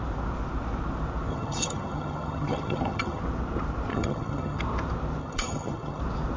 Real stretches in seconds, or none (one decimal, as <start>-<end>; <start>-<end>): 0.0-1.3; 3.2-3.9; 4.6-5.2; 6.0-6.4